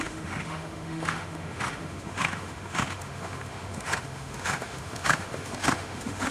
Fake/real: fake